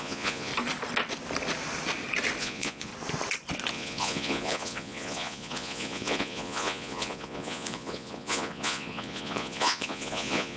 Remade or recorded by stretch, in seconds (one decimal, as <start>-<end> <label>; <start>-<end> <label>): 0.0-0.5 remade; 0.5-2.4 recorded; 2.4-2.9 remade; 2.9-3.7 recorded; 3.7-10.6 remade